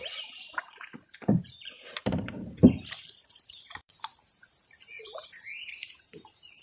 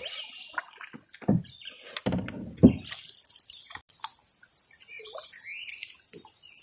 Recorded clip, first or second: second